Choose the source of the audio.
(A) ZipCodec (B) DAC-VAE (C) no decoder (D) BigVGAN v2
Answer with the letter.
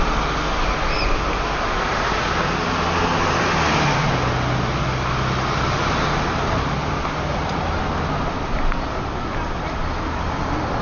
C